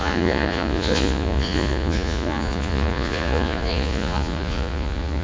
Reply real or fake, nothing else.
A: fake